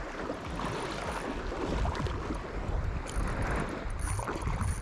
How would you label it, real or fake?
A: real